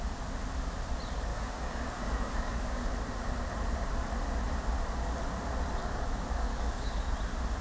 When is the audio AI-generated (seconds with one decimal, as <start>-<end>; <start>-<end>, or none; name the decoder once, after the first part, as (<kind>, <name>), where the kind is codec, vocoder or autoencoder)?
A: 1.3-2.9 (codec, DAC); 5.8-7.0